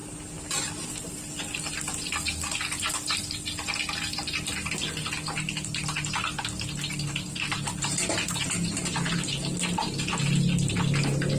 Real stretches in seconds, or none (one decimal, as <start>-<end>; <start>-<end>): 0.0-11.4

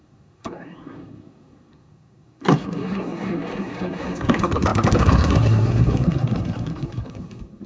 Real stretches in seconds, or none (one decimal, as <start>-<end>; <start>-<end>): none

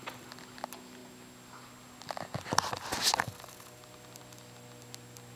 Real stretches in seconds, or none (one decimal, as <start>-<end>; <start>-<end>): 0.0-5.4